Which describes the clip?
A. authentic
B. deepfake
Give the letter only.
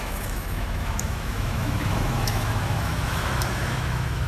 B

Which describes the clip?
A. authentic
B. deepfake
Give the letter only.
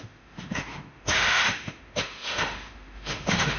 B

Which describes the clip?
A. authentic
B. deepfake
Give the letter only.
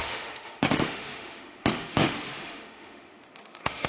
B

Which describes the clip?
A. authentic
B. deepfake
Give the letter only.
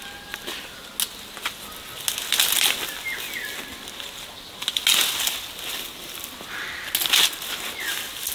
A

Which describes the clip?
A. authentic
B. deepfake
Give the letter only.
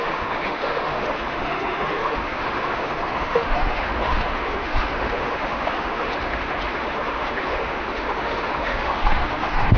B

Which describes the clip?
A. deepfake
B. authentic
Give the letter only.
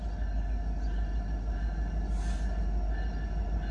B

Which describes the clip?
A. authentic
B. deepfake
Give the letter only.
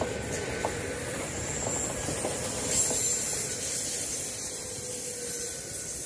A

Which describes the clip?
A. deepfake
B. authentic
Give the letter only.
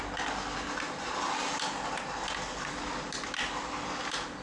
B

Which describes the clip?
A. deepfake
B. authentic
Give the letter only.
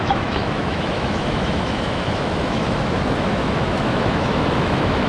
A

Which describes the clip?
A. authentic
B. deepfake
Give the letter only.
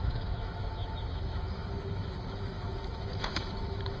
B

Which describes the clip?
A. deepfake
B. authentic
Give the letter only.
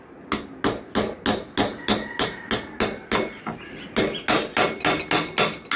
B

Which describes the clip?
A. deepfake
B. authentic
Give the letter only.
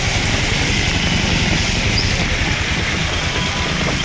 B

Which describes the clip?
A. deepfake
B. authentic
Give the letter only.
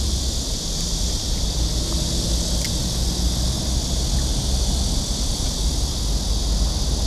B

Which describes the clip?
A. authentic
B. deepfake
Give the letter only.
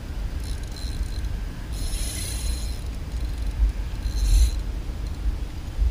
A